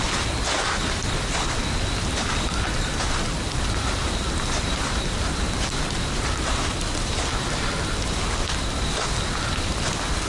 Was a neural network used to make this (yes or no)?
no